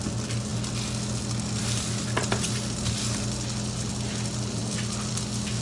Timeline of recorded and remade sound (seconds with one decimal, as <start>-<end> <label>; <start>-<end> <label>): 0.0-5.6 recorded